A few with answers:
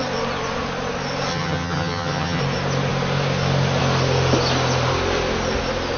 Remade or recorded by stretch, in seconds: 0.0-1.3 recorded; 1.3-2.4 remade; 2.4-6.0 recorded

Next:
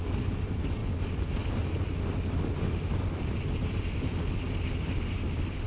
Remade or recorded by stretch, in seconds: 0.0-5.7 recorded

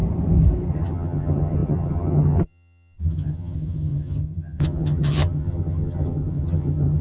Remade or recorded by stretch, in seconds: 0.0-0.7 recorded; 0.7-7.0 remade

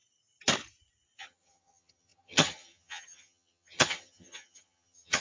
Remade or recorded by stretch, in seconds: 0.0-1.2 recorded; 1.2-5.2 remade

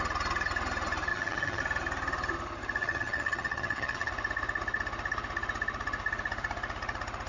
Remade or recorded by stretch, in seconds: 0.0-1.1 recorded; 1.1-1.6 remade; 1.6-2.8 recorded; 2.8-4.1 remade; 4.1-7.3 recorded

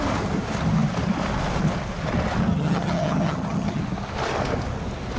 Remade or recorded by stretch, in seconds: 0.0-2.5 recorded; 2.5-3.8 remade; 3.8-5.2 recorded

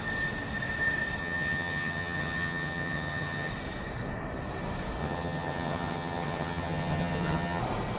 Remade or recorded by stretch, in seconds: 0.0-1.2 recorded; 1.2-3.5 remade; 3.5-5.0 recorded; 5.0-7.6 remade; 7.6-8.0 recorded

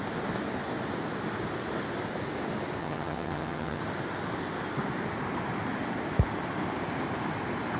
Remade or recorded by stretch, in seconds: 0.0-2.8 recorded; 2.8-3.8 remade; 3.8-7.8 recorded